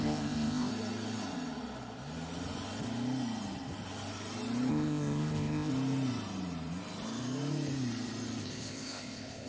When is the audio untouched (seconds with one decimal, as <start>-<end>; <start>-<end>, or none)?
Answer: 0.7-4.7; 5.7-8.4